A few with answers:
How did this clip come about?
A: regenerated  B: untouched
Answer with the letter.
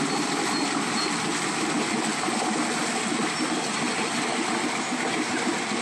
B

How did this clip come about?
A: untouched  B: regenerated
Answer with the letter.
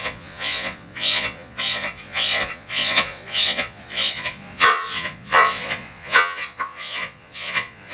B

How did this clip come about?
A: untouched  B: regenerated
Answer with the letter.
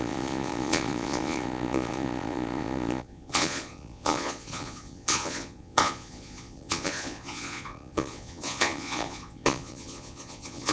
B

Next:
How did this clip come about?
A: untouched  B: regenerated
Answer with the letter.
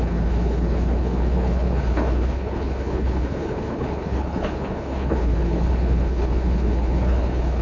B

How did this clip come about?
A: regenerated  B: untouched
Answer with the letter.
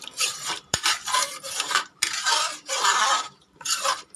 A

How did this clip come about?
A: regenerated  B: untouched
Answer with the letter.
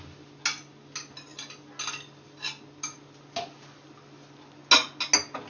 B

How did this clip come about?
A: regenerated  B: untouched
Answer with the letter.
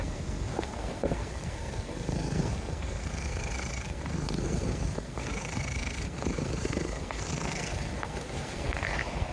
A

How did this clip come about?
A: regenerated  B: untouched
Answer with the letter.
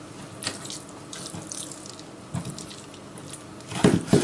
B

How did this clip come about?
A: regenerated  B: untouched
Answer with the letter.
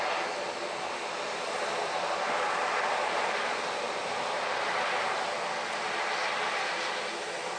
B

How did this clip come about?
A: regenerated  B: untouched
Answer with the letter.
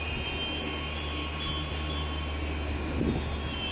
B